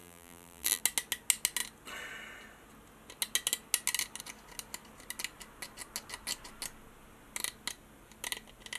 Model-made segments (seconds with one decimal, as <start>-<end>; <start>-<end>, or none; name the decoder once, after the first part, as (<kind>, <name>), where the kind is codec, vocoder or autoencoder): 0.0-0.8 (vocoder, BigVGAN v2)

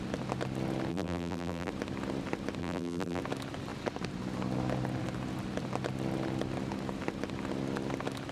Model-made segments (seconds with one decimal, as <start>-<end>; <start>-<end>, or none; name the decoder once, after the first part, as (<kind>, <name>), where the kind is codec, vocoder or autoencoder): 0.9-1.7 (vocoder, BigVGAN v2); 2.6-3.2

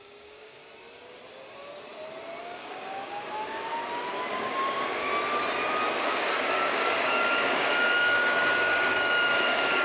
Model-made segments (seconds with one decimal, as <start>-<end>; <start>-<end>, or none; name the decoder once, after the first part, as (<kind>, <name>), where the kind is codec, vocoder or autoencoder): 0.0-0.6 (codec, DAC); 2.4-3.8; 4.3-5.1; 6.0-9.8

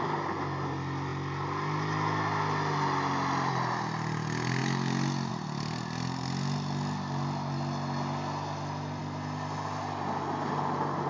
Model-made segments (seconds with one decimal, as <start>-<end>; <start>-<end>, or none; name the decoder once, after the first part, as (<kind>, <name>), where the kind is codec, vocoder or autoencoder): none

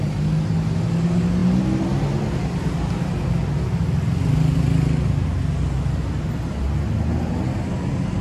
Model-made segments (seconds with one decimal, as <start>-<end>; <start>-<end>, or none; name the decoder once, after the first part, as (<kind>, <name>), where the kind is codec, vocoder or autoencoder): none